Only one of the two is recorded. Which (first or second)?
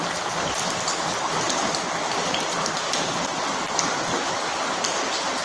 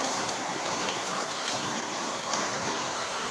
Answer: first